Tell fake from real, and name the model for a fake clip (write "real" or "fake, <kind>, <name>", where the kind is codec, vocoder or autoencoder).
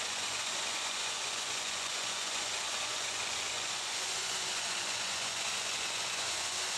fake, vocoder, Vocos